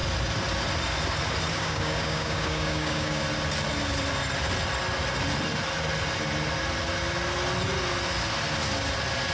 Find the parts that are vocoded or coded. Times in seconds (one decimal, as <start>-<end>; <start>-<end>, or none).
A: 1.5-3.2